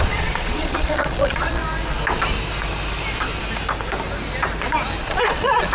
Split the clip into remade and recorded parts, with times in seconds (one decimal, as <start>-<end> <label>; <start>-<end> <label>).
0.0-1.6 remade; 1.6-5.0 recorded; 5.0-5.7 remade